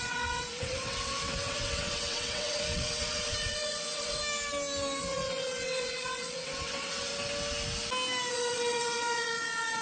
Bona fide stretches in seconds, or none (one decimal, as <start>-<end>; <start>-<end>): 4.2-5.0; 7.1-8.3